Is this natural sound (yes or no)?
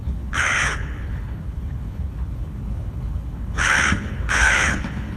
no